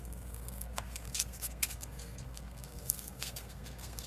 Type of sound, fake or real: fake